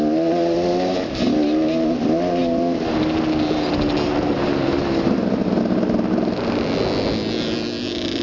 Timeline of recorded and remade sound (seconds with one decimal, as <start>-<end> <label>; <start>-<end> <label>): 0.0-8.2 recorded